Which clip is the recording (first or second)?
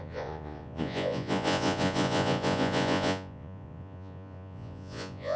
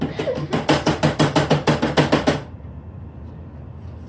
second